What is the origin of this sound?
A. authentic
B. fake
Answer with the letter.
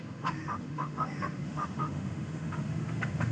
B